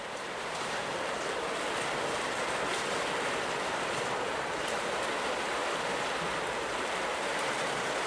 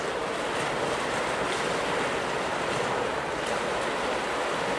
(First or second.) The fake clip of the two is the first